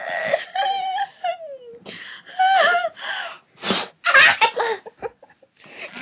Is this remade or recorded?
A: recorded